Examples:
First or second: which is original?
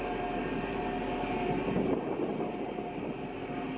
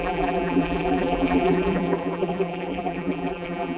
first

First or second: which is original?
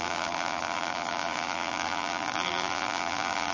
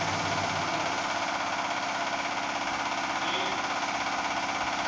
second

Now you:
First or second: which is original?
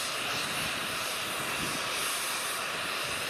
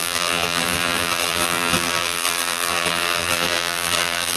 first